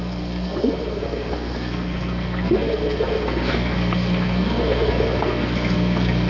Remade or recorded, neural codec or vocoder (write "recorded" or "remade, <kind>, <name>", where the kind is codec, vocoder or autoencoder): remade, codec, SNAC